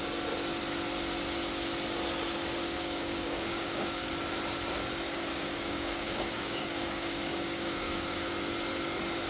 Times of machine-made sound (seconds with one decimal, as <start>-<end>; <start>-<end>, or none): 2.6-4.1; 5.3-8.3